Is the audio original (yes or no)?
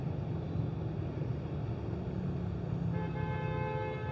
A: yes